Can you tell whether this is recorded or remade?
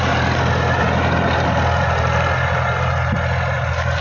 recorded